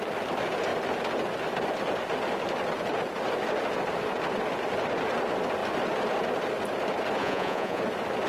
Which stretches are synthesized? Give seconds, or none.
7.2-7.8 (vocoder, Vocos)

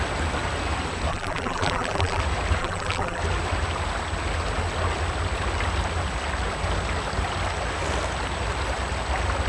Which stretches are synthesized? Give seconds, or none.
1.1-2.2 (vocoder, BigVGAN v2); 2.6-3.2

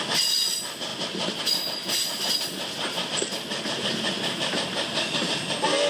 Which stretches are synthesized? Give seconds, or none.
none

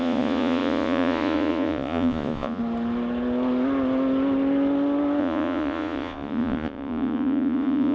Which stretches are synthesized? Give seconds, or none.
0.0-2.6 (vocoder, Vocos); 5.2-7.9

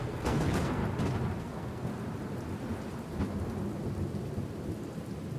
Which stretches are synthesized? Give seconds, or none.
0.0-0.8 (codec, SNAC); 1.4-1.9

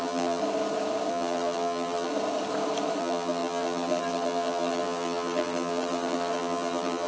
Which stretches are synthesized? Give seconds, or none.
0.0-0.4 (vocoder, BigVGAN v2); 1.1-2.1; 3.0-7.1